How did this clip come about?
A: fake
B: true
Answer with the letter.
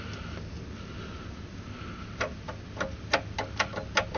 B